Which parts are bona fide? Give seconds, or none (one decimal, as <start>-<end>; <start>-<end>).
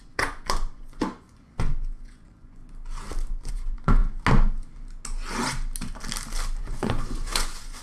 2.6-3.5; 4.0-6.6